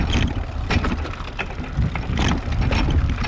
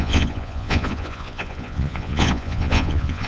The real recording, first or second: first